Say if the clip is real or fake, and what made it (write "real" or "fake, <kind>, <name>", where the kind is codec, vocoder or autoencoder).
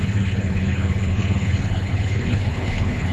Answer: fake, codec, HILCodec